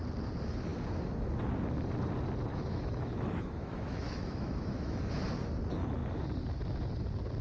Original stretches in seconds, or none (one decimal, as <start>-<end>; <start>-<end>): 0.0-2.5; 5.1-7.4